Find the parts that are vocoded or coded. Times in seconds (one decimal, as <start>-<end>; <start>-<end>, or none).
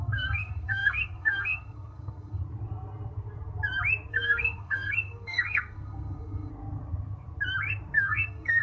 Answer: 0.0-2.4; 4.1-6.5; 8.0-8.6